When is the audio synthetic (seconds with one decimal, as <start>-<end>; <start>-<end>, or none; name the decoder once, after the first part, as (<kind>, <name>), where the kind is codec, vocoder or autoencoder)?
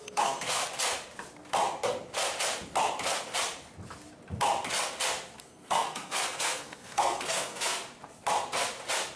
0.0-0.6 (codec, SNAC); 5.4-7.8